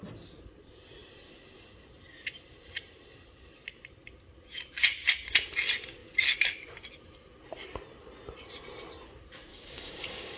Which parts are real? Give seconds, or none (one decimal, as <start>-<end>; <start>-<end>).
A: 0.0-9.5